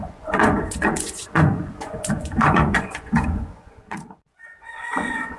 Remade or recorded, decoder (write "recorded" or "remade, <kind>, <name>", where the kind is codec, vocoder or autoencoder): remade, vocoder, Vocos